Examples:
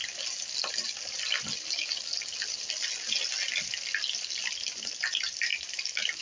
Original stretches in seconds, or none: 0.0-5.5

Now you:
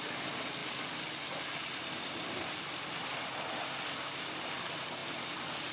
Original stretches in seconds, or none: 0.6-1.8

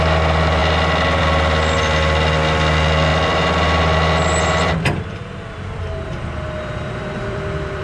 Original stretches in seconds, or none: 0.0-3.1

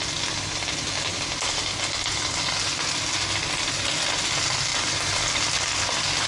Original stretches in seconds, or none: 0.0-4.7; 5.2-6.3